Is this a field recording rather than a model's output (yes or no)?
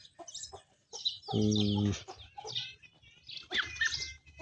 yes